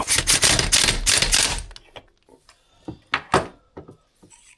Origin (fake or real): real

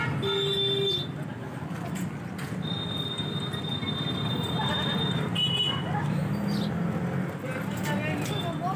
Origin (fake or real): real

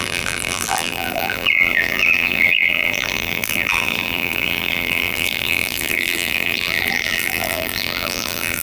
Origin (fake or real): fake